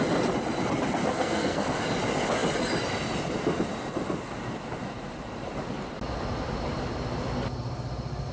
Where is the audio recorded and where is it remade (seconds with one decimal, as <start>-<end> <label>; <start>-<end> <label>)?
0.0-1.0 recorded; 1.0-1.8 remade; 1.8-8.3 recorded